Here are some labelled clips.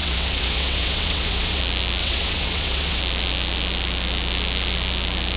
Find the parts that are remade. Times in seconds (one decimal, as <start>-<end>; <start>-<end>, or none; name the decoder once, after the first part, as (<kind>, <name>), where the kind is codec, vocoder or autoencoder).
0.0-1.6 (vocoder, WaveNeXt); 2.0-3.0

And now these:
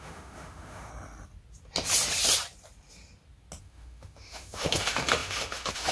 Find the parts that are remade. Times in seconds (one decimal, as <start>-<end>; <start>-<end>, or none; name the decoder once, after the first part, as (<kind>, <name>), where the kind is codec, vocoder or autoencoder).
0.0-0.9 (autoencoder, DAC-VAE); 3.6-5.9

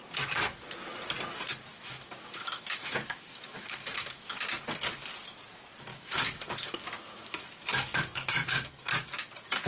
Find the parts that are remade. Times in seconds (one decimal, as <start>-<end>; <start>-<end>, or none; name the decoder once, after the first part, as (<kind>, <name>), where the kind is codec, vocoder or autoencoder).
1.7-4.3 (autoencoder, DAC-VAE); 5.9-9.1

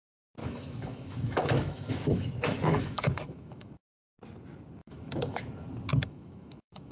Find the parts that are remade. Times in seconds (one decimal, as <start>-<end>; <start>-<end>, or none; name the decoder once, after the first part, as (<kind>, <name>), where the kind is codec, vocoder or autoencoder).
0.4-3.7 (autoencoder, DAC-VAE); 4.8-5.4; 5.9-6.9

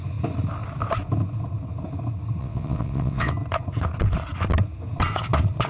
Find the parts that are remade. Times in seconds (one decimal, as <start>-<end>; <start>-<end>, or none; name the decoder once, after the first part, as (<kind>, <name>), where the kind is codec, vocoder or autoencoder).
2.4-3.3 (vocoder, WaveNeXt)